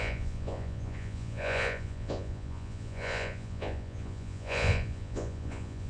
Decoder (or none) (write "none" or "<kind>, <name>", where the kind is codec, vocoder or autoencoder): vocoder, Vocos